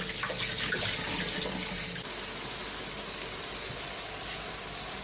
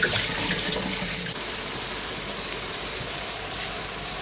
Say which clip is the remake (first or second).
second